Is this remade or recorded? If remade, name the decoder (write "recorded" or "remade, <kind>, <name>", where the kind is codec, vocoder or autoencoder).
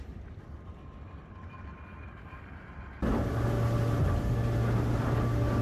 recorded